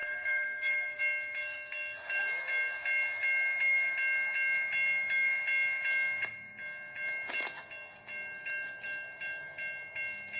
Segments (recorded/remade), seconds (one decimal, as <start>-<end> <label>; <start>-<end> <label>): 0.0-1.0 remade; 1.0-10.4 recorded